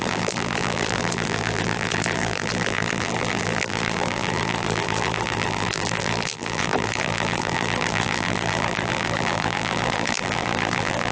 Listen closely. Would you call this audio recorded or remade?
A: remade